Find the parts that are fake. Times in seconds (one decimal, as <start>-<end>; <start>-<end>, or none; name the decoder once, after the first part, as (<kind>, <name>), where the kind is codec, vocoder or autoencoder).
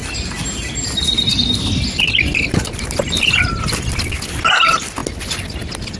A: none